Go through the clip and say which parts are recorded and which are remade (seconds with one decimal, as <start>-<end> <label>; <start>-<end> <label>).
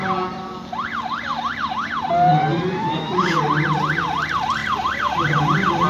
0.0-2.3 recorded; 2.3-3.3 remade; 3.3-4.6 recorded; 4.6-5.4 remade; 5.4-5.9 recorded